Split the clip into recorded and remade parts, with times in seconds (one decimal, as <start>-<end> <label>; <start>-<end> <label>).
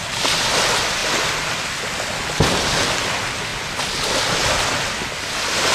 0.0-5.7 recorded